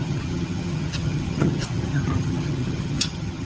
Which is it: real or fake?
fake